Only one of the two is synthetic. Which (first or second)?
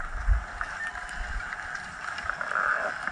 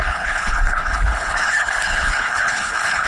second